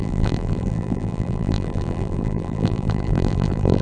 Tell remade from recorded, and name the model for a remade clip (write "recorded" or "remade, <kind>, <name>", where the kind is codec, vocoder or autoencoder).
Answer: remade, vocoder, BigVGAN v2